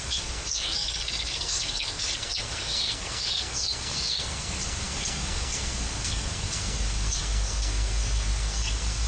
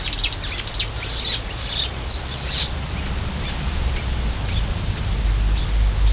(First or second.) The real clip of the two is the second